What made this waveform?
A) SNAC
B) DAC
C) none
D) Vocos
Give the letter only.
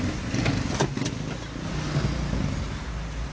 C